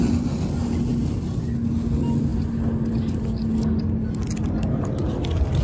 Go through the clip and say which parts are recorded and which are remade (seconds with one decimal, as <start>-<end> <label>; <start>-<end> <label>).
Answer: 0.0-5.6 recorded